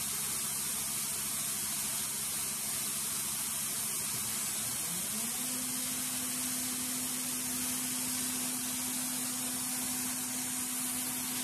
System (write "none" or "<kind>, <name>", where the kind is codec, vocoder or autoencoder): none